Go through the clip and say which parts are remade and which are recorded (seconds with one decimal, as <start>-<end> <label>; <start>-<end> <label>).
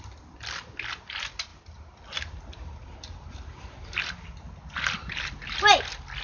0.0-6.2 recorded